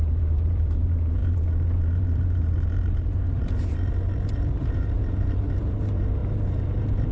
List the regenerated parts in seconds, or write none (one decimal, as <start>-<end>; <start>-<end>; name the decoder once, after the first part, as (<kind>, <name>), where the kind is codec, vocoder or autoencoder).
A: 0.0-7.1 (vocoder, BigVGAN v2)